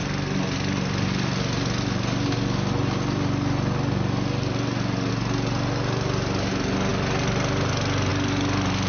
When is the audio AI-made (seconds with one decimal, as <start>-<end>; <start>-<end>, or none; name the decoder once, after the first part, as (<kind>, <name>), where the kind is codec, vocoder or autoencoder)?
none